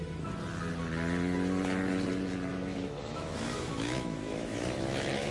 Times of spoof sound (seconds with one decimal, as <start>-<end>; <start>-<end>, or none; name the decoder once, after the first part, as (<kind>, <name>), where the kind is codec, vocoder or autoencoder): 2.5-5.3 (autoencoder, DAC-VAE)